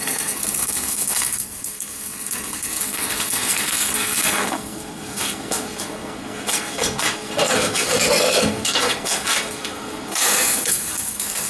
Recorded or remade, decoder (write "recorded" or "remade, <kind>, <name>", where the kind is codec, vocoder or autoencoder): remade, codec, SNAC